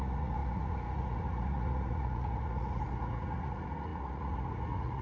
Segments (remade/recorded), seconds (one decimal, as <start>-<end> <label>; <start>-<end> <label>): 0.0-5.0 remade